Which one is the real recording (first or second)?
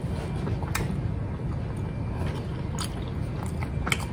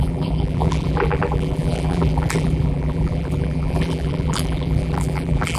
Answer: first